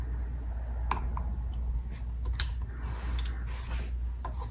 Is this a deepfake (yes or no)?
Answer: no